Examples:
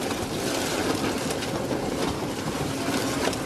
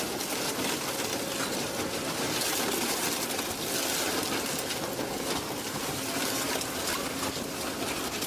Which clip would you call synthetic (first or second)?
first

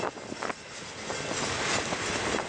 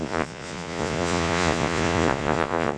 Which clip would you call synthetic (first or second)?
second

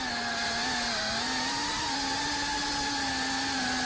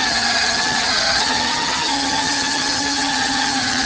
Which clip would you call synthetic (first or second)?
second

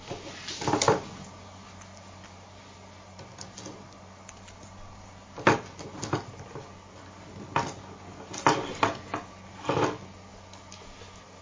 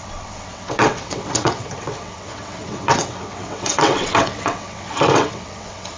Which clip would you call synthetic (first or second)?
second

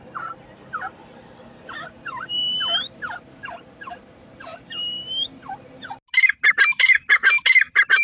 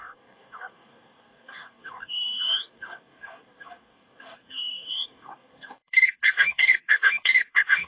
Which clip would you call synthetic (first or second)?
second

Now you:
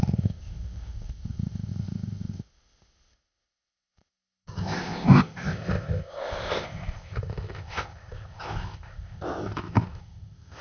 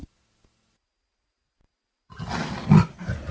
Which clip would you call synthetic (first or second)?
first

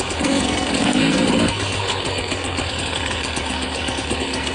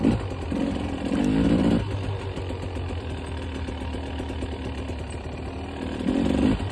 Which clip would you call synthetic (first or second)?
first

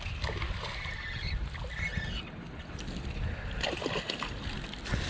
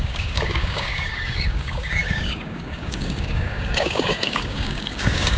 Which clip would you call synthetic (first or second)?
second